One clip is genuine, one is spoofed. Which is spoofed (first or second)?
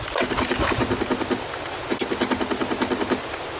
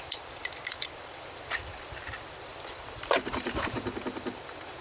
second